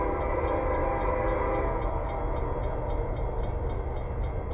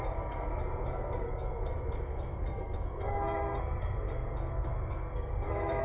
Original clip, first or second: first